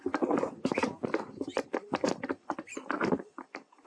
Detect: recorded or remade recorded